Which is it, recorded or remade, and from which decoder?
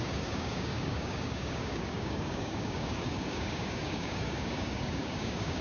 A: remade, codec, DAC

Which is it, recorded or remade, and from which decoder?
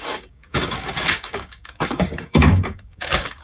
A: remade, codec, DAC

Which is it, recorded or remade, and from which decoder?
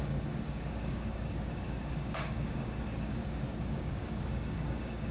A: remade, codec, DAC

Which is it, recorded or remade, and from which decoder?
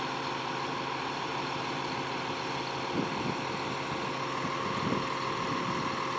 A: recorded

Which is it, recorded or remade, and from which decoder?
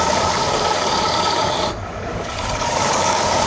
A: remade, codec, DAC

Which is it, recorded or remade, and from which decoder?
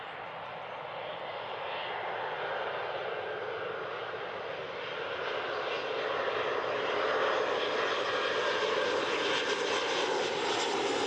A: recorded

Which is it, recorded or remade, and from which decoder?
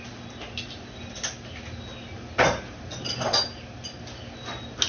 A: recorded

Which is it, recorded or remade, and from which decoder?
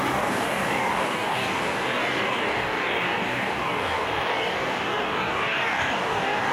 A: remade, codec, DAC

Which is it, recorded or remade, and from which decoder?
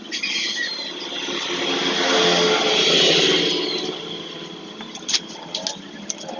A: recorded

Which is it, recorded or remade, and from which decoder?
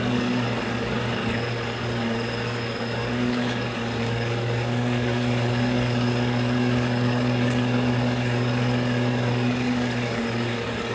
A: remade, codec, DAC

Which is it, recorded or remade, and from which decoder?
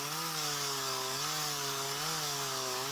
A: remade, codec, DAC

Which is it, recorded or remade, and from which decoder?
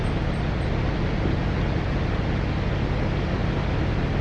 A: recorded